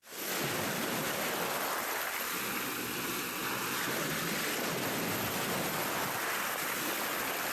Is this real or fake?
real